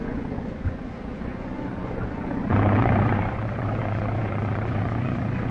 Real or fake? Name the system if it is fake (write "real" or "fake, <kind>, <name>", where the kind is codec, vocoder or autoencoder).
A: fake, vocoder, Vocos